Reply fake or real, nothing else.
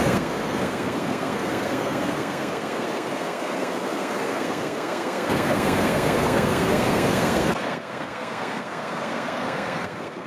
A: fake